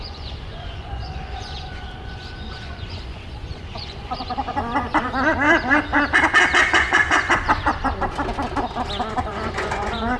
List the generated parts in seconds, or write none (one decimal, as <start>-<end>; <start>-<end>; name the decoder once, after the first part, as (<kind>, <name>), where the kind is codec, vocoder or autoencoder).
0.0-5.9 (vocoder, Vocos); 6.6-7.7; 9.1-10.2